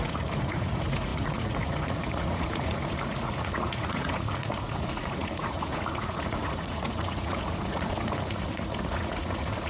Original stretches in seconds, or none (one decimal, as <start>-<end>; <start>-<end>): none